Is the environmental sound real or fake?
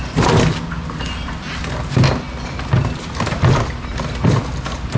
real